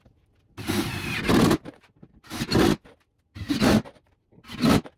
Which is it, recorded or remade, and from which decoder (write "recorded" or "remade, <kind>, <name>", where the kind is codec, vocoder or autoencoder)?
recorded